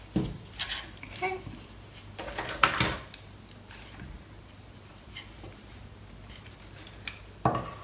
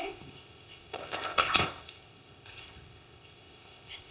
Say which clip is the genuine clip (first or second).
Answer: first